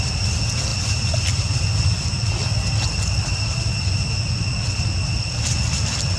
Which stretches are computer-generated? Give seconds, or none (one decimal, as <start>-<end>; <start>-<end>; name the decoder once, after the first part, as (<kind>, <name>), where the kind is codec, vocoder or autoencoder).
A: 0.7-1.6 (vocoder, BigVGAN v2)

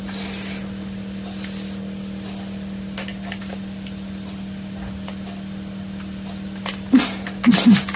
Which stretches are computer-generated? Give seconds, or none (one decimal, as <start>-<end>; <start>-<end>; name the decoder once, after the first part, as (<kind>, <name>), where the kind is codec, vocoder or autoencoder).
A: none